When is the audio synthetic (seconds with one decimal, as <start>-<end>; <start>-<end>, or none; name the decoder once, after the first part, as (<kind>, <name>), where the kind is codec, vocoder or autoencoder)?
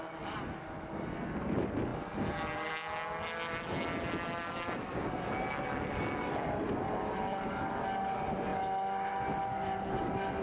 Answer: none